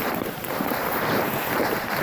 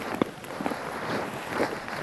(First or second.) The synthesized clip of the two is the first